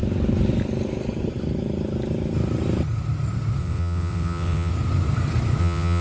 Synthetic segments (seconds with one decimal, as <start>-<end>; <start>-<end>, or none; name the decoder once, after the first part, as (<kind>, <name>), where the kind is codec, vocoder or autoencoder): 3.6-4.7 (vocoder, WaveNeXt); 5.6-6.0